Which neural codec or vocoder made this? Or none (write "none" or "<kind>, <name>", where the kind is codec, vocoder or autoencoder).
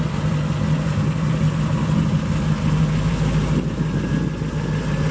none